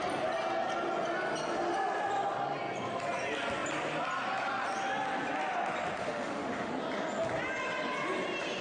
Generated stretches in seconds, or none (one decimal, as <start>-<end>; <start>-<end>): 6.0-6.7